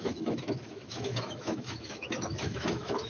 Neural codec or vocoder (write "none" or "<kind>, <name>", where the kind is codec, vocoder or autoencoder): autoencoder, DAC-VAE